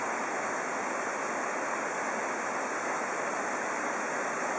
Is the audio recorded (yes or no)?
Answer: yes